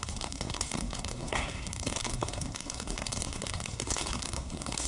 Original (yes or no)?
no